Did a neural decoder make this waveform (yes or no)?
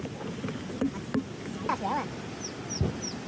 no